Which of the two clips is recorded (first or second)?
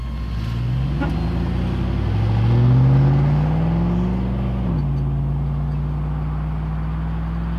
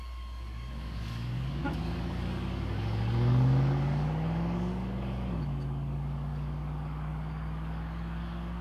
first